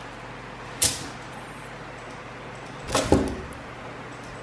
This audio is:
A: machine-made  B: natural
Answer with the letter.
B